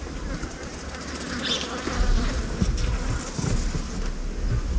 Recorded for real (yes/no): yes